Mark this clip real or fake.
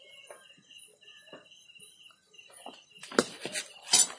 real